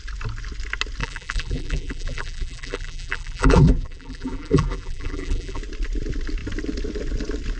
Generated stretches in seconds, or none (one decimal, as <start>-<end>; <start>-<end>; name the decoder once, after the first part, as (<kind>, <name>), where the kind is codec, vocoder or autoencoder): 1.0-5.6 (vocoder, BigVGAN v2)